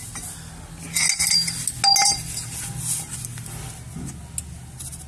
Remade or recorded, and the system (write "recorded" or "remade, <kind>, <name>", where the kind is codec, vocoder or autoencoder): recorded